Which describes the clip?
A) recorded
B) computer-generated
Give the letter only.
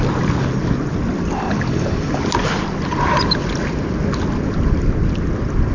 A